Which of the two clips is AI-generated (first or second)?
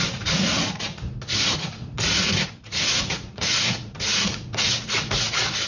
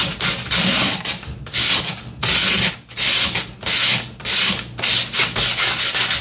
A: first